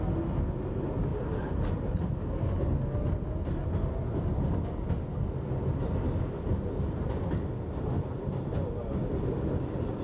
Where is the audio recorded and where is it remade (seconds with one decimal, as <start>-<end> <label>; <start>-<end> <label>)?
0.0-1.1 recorded; 1.1-2.2 remade; 2.2-10.0 recorded